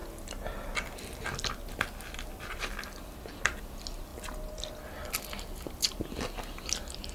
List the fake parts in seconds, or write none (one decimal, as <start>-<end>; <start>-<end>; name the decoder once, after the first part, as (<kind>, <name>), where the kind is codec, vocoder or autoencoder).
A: none